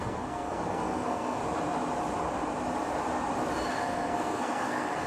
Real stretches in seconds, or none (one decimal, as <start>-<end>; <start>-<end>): 1.4-3.7